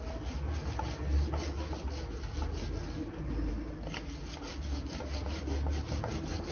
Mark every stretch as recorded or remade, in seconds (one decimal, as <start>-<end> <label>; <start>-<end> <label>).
0.0-6.5 recorded